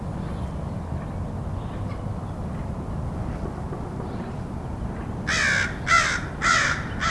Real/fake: real